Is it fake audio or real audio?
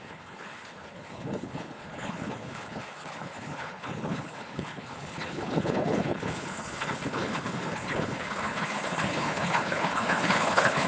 fake